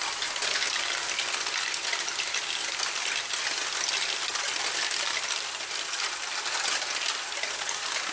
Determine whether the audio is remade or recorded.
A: recorded